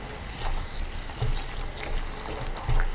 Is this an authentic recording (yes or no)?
yes